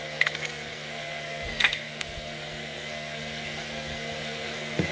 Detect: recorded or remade remade